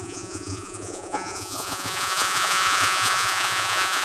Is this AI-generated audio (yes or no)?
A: yes